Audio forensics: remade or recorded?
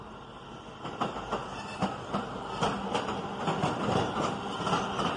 recorded